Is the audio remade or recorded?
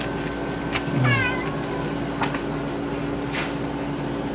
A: recorded